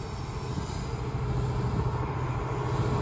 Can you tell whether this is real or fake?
real